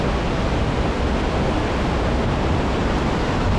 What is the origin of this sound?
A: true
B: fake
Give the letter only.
A